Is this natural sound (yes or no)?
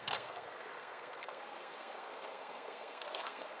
no